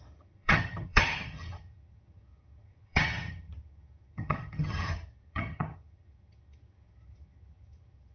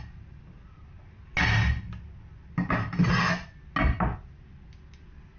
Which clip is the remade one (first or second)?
first